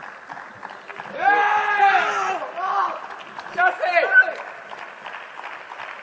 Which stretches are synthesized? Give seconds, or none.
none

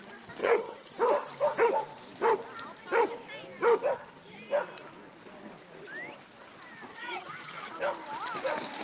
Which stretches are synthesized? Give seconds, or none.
0.4-0.9 (vocoder, HiFi-GAN); 6.9-7.7

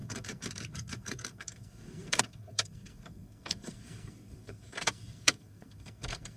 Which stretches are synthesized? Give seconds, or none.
0.0-6.4 (codec, SNAC)

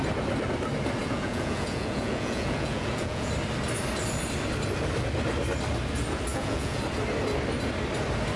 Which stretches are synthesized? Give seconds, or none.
1.0-3.3 (vocoder, Vocos); 6.3-6.8

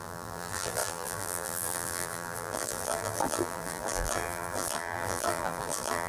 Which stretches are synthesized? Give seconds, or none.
0.0-6.1 (vocoder, BigVGAN v2)

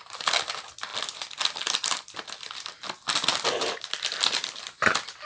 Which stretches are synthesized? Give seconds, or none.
none